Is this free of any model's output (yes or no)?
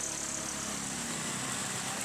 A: yes